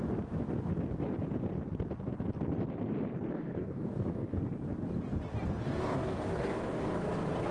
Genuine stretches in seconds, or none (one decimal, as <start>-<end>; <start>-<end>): 0.0-3.3; 4.4-5.6; 6.9-7.5

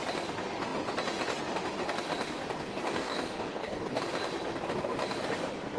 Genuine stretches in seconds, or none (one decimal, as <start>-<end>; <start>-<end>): 0.0-2.7; 4.0-5.8

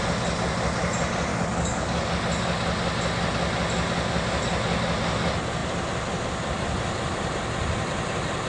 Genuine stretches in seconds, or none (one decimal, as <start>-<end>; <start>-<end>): 0.0-1.3; 2.1-8.5

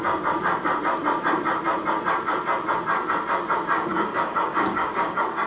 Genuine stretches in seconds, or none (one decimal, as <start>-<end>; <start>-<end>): 0.0-3.9

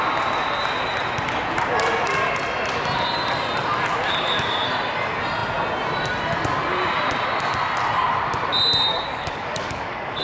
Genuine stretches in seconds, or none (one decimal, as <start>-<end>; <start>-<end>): 0.0-8.9

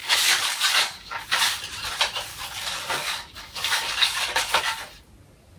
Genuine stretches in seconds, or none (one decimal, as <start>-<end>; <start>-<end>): 1.6-2.3; 4.6-5.6

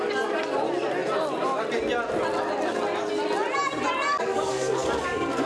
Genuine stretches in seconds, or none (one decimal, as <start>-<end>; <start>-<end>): 0.0-4.1